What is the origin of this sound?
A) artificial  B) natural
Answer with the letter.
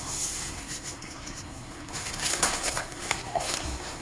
A